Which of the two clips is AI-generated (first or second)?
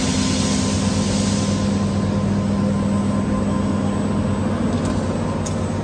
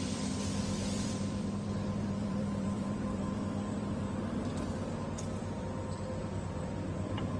second